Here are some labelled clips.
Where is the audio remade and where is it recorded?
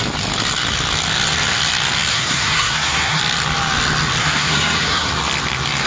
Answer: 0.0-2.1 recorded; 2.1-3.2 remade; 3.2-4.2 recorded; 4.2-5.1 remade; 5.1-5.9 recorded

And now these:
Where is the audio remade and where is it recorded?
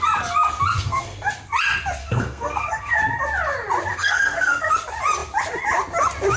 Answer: 0.0-0.7 recorded; 0.7-1.3 remade; 1.3-2.0 recorded; 2.0-3.0 remade; 3.0-3.9 recorded; 3.9-4.7 remade; 4.7-6.4 recorded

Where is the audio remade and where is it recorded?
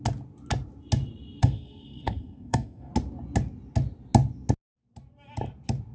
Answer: 0.0-1.4 recorded; 1.4-2.9 remade; 2.9-5.9 recorded